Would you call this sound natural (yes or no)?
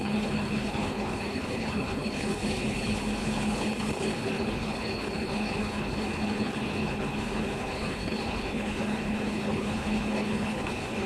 no